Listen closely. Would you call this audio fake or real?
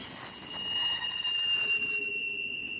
real